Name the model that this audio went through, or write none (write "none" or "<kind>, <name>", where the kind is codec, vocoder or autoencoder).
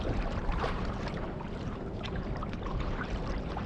vocoder, BigVGAN v2